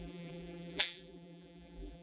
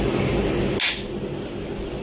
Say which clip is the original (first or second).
second